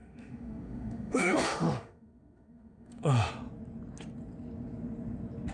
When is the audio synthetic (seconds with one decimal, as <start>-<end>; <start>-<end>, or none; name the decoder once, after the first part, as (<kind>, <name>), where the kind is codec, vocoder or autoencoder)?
0.0-3.3 (autoencoder, DAC-VAE)